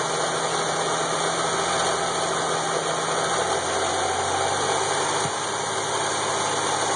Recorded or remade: recorded